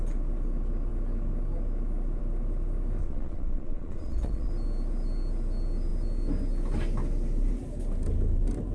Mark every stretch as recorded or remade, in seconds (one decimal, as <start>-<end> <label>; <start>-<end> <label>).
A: 0.0-3.0 recorded; 3.0-4.5 remade; 4.5-8.7 recorded